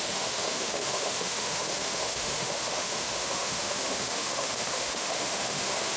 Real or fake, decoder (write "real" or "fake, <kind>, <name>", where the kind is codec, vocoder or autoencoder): fake, autoencoder, DAC-VAE